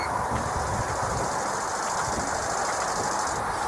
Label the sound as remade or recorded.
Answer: recorded